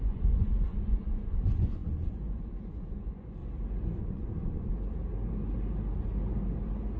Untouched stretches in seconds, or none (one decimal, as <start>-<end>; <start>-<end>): 3.4-4.0; 4.7-7.0